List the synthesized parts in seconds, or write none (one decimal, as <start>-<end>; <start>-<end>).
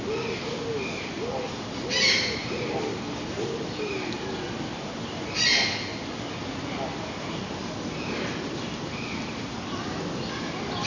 none